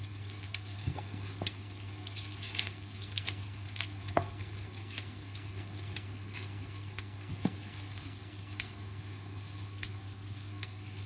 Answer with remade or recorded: remade